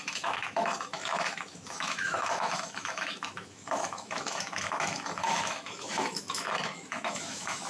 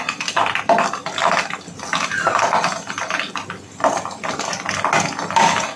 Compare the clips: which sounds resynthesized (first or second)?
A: first